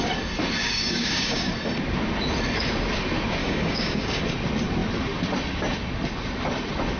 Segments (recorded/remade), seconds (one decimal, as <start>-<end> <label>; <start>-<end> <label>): 0.0-0.6 recorded; 0.6-1.5 remade; 1.5-3.4 recorded; 3.4-4.2 remade; 4.2-7.0 recorded